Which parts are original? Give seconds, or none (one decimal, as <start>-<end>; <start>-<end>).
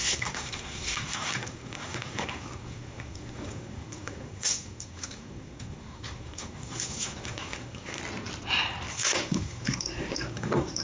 8.0-8.9